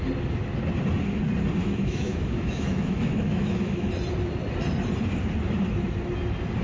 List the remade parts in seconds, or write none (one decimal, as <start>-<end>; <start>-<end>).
1.6-3.9